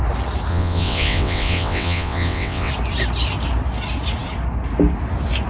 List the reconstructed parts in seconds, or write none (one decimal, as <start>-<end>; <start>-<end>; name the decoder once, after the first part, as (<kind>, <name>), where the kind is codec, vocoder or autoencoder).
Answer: 0.5-2.7 (vocoder, WaveNeXt)